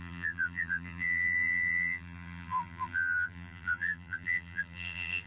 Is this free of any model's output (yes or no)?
no